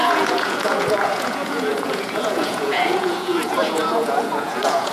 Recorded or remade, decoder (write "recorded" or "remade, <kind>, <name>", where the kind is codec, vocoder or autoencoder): remade, vocoder, Vocos